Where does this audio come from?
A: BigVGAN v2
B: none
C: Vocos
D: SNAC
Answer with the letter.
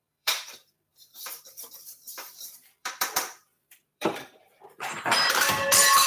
A